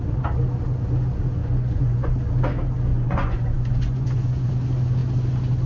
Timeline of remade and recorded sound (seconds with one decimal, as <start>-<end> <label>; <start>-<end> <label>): 0.0-1.4 recorded; 1.4-2.1 remade; 2.1-2.9 recorded; 2.9-4.5 remade; 4.5-5.7 recorded